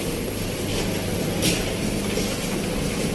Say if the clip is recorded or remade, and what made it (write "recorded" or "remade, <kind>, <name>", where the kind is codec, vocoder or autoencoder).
recorded